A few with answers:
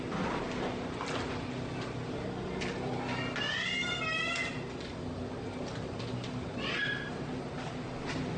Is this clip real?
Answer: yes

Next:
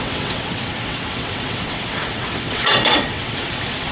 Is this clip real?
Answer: no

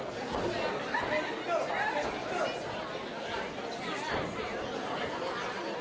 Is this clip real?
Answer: yes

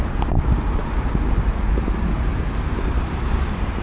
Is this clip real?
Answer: yes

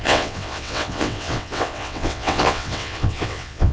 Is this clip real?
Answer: no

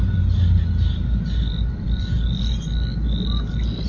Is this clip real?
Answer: yes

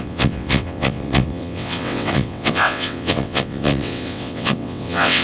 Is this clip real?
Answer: no